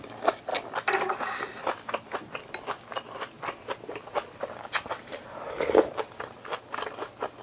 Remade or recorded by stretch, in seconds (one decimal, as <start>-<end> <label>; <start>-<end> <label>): 0.0-7.4 recorded